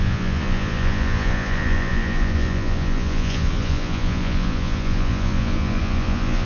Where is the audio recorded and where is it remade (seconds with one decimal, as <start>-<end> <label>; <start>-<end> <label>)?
0.0-6.5 remade